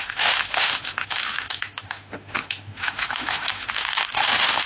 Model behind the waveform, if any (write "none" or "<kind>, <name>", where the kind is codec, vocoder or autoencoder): autoencoder, DAC-VAE